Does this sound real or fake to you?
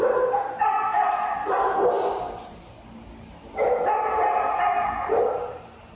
real